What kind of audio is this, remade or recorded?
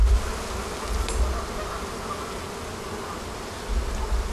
recorded